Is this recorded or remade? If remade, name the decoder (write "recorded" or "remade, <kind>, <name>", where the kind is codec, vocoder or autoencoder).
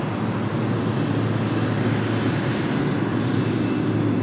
recorded